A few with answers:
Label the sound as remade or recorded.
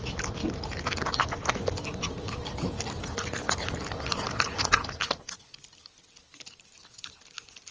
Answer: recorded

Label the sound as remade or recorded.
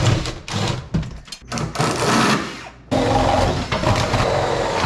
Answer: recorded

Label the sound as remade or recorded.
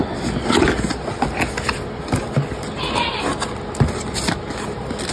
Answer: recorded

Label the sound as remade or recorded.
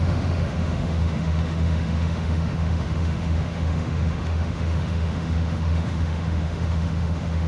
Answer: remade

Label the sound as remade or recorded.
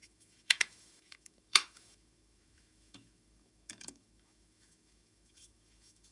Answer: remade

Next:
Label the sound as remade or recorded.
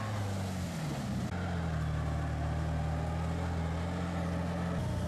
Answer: recorded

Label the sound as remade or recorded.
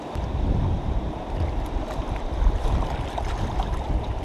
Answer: recorded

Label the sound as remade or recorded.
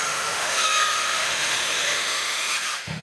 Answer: remade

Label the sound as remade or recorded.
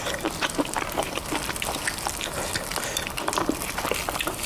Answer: recorded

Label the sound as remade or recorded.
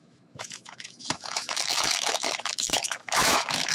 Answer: remade